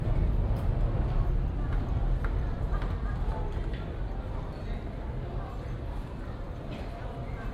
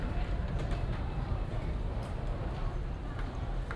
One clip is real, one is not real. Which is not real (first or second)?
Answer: second